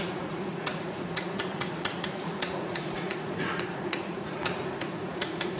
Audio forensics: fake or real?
fake